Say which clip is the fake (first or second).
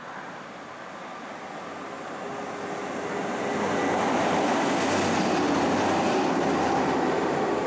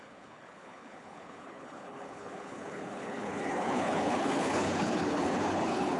second